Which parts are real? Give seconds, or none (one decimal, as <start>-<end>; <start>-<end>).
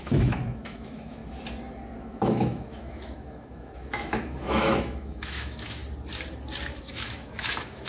1.2-2.0; 5.8-6.8